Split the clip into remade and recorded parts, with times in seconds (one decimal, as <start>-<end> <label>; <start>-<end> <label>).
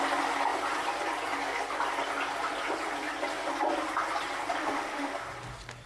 0.0-4.6 recorded; 4.6-5.1 remade; 5.1-5.9 recorded